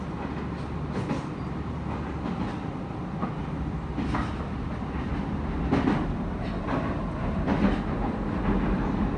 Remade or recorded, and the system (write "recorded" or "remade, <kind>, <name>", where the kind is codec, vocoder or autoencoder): recorded